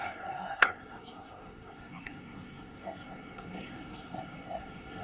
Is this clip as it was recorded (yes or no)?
no